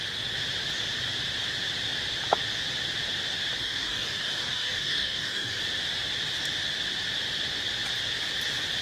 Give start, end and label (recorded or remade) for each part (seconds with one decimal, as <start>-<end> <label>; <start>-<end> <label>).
0.0-3.6 recorded; 3.6-5.6 remade; 5.6-8.8 recorded